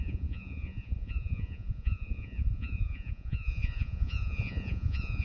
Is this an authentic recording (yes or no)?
no